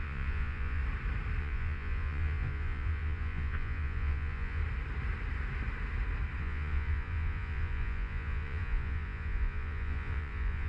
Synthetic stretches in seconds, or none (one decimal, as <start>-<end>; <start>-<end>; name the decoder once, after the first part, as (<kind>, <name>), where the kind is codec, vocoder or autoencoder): 0.0-0.8 (vocoder, Vocos); 1.4-4.6; 6.4-10.7